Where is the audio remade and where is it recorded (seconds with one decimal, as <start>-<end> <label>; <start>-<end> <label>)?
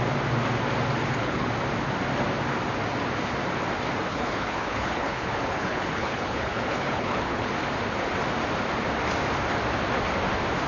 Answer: 0.0-1.0 recorded; 1.0-1.5 remade; 1.5-4.1 recorded; 4.1-7.5 remade; 7.5-10.7 recorded